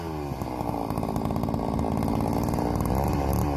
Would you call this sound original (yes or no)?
yes